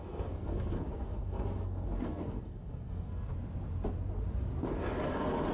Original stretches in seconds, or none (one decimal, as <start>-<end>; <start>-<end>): 3.3-5.5